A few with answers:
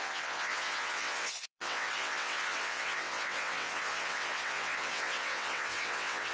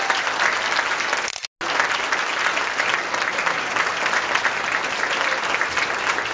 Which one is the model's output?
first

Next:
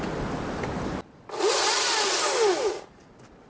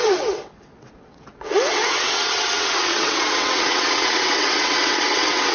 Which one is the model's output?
second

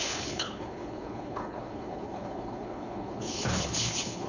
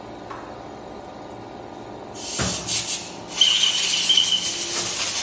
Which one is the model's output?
first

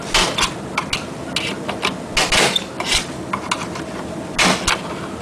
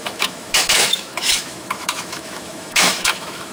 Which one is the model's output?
second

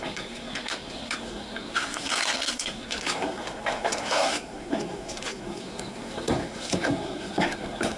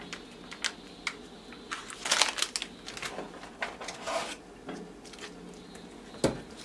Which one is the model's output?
first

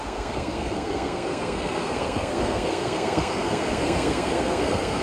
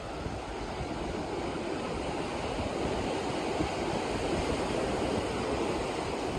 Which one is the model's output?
first